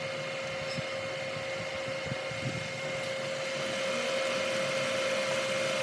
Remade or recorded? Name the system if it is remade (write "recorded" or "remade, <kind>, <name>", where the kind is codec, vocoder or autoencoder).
recorded